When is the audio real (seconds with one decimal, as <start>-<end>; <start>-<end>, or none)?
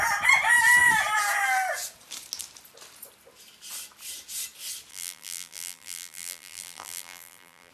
0.0-4.9